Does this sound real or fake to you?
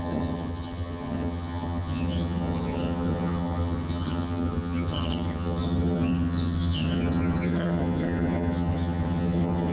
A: fake